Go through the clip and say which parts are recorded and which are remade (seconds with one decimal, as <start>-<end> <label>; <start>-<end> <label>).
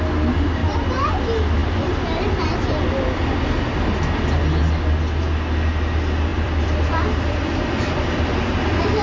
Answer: 0.0-6.3 recorded; 6.3-7.9 remade; 7.9-9.0 recorded